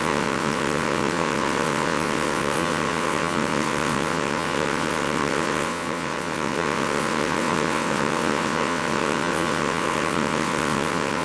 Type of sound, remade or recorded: remade